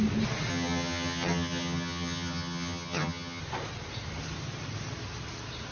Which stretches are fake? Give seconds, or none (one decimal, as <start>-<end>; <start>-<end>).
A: 0.5-3.4